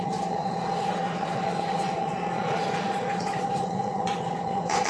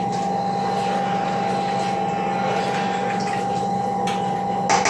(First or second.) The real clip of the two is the second